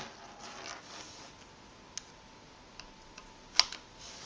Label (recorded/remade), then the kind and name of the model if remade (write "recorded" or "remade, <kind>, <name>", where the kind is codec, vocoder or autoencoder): recorded